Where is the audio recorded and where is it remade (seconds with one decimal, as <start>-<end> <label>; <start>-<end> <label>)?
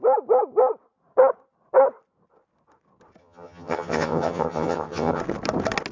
0.0-3.2 recorded; 3.2-5.2 remade; 5.2-5.9 recorded